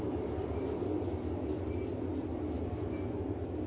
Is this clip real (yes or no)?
yes